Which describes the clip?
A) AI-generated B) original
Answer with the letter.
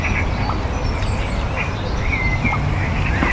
A